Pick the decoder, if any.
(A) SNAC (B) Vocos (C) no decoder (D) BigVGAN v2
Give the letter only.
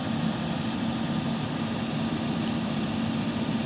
C